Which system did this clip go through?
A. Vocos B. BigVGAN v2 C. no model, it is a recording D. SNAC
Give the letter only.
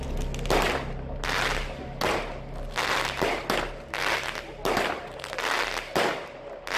C